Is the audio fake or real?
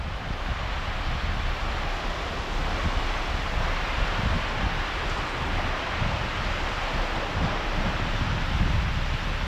real